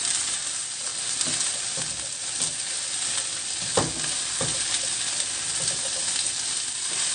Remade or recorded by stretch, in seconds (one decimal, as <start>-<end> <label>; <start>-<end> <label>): 0.0-7.1 recorded